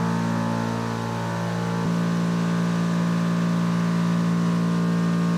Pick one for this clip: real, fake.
real